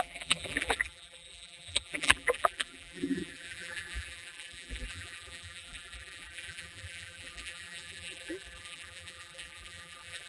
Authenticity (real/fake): fake